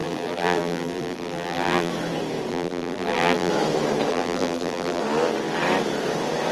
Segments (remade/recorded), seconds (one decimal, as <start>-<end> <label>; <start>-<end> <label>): 0.0-1.9 remade; 1.9-2.5 recorded; 2.5-3.5 remade; 3.5-4.1 recorded; 4.1-5.0 remade; 5.0-6.5 recorded